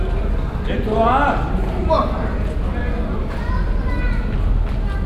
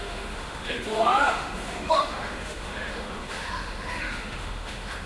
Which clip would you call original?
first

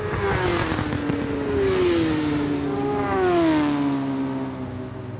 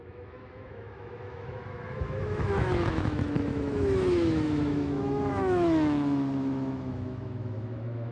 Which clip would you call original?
first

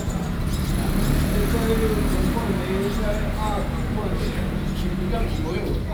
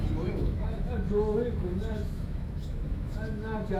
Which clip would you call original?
first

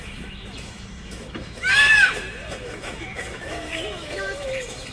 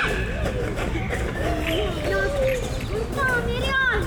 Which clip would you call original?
second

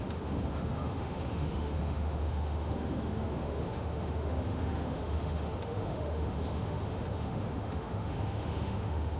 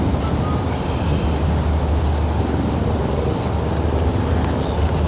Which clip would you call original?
second